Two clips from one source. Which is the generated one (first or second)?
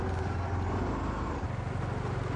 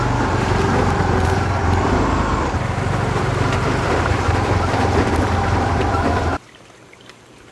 second